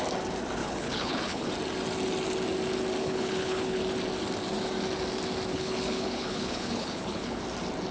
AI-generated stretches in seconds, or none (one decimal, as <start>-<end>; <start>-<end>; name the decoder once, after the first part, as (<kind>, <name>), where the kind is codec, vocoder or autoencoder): 0.6-1.5 (codec, HILCodec); 3.0-3.8; 5.5-7.4